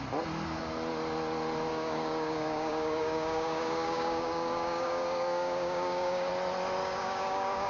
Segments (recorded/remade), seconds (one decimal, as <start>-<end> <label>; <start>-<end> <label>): 0.0-1.7 recorded; 1.7-6.3 remade; 6.3-6.8 recorded; 6.8-7.7 remade